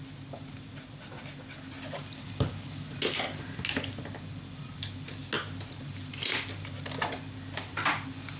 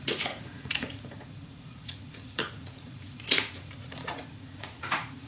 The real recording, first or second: first